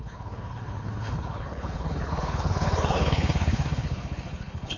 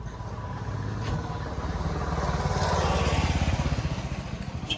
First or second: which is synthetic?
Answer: first